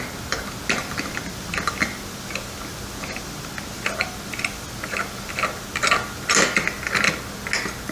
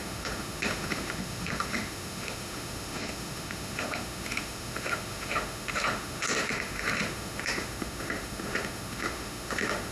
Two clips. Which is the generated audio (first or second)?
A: second